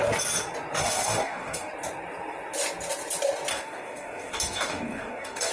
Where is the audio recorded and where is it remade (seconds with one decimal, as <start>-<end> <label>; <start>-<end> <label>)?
0.0-0.8 recorded; 0.8-1.7 remade; 1.7-3.5 recorded; 3.5-5.5 remade